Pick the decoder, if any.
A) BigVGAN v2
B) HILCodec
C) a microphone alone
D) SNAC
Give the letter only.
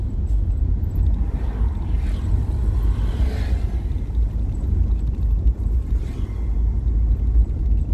C